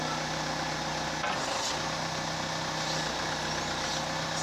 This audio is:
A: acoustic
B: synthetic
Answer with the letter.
A